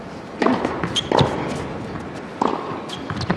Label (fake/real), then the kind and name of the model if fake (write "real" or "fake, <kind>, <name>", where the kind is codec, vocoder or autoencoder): real